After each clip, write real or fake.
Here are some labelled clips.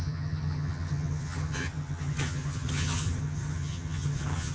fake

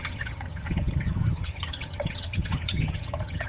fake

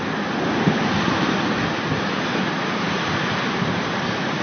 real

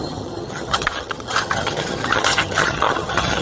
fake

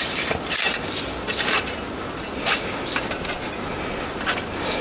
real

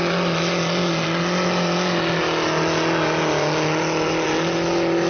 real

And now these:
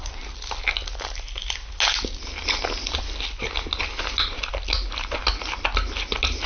real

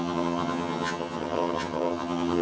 fake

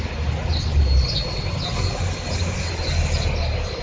real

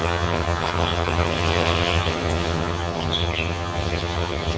fake